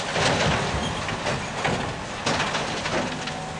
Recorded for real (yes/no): yes